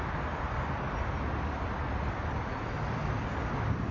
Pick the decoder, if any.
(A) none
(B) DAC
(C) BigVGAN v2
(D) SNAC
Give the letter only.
A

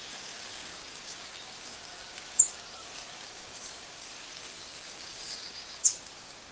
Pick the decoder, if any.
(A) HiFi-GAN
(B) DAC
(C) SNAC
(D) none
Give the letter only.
B